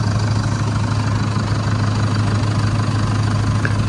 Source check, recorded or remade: recorded